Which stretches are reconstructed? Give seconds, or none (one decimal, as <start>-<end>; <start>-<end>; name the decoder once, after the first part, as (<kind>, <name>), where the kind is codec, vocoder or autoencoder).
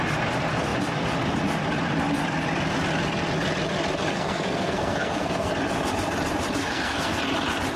4.1-5.5 (codec, SNAC); 6.6-7.2